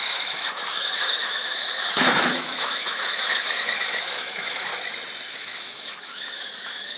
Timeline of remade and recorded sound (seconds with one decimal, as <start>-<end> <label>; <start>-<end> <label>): 0.0-4.7 remade; 4.7-5.3 recorded; 5.3-7.0 remade